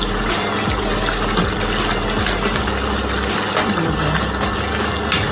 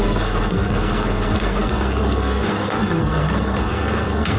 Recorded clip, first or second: first